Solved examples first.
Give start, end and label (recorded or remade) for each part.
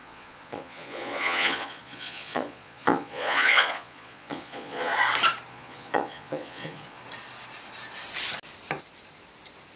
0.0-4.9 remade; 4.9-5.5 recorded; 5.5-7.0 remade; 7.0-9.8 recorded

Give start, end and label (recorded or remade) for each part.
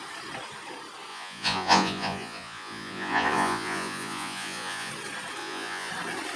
0.0-1.1 recorded; 1.1-4.9 remade; 4.9-5.4 recorded; 5.4-5.9 remade; 5.9-6.4 recorded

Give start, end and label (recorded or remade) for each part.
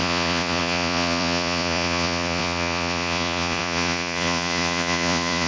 0.0-5.5 remade